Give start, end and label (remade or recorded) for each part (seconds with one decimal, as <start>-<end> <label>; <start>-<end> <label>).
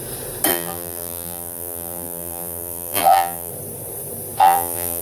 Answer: 0.0-0.5 recorded; 0.5-3.5 remade; 3.5-4.4 recorded; 4.4-5.0 remade